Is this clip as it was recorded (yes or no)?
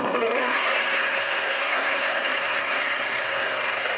no